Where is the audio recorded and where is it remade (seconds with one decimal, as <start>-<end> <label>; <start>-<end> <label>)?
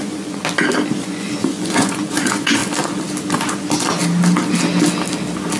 0.0-0.4 remade; 0.4-1.0 recorded; 1.0-2.6 remade; 2.6-5.6 recorded